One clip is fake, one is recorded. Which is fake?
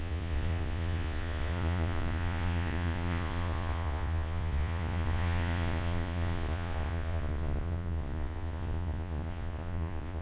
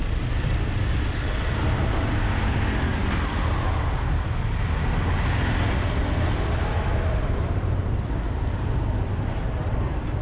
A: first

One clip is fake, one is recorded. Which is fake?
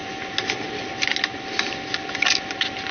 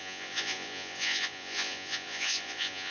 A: second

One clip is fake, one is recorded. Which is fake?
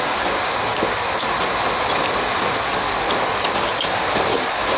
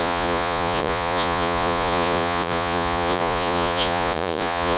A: second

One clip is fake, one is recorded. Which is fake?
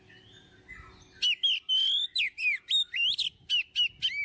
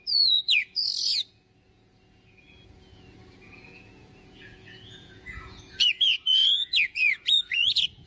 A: second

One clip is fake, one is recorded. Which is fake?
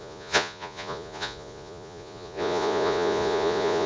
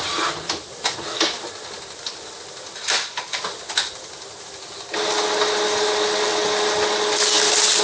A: first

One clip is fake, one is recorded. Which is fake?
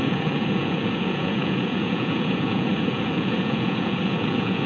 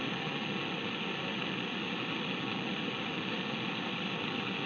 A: first